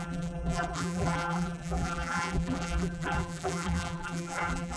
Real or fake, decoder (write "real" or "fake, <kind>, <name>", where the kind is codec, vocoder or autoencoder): fake, vocoder, BigVGAN v2